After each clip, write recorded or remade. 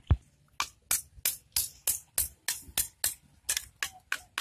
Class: recorded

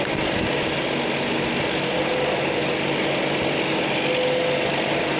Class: recorded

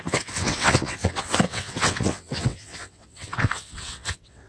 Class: remade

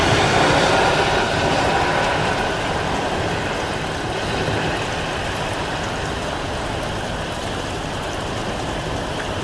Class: recorded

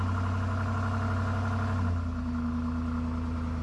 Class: recorded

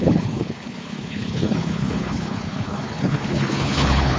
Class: remade